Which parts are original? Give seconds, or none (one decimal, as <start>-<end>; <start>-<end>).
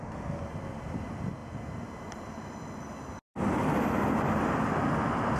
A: 0.0-5.4